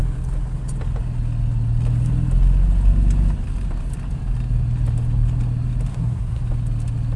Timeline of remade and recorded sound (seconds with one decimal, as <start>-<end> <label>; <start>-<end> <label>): 0.0-5.9 recorded; 5.9-6.4 remade; 6.4-7.2 recorded